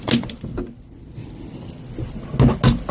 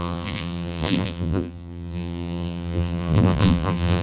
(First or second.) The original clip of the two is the first